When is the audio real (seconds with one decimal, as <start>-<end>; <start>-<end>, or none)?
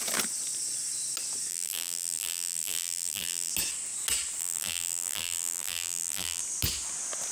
0.0-1.5; 3.5-4.4; 6.4-7.3